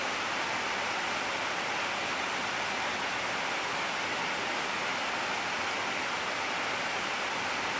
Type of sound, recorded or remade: recorded